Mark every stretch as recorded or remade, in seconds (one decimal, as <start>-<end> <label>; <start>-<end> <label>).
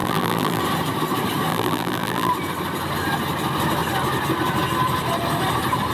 0.0-0.6 remade; 0.6-1.5 recorded; 1.5-2.3 remade; 2.3-5.9 recorded